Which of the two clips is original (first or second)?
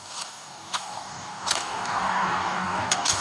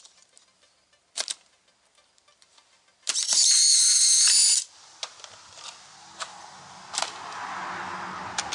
second